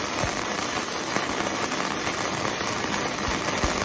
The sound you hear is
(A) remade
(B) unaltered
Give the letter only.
B